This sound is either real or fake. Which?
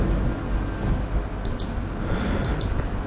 real